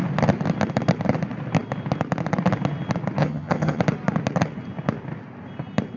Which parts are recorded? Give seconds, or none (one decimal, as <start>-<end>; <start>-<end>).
0.0-3.2; 3.8-6.0